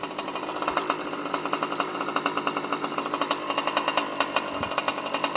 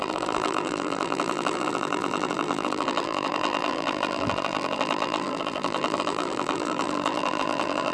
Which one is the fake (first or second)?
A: second